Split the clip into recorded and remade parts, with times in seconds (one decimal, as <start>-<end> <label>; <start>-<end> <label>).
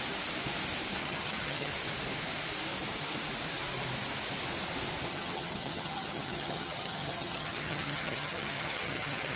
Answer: 0.0-1.0 recorded; 1.0-1.7 remade; 1.7-5.1 recorded; 5.1-9.4 remade